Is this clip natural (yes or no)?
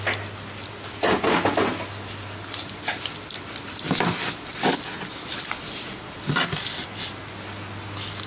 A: yes